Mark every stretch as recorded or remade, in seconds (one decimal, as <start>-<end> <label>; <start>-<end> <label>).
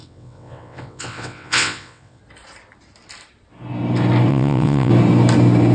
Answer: 0.0-2.2 remade; 2.2-4.3 recorded; 4.3-4.9 remade; 4.9-5.7 recorded